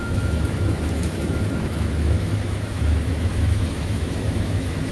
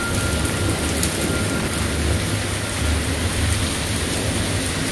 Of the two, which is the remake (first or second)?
first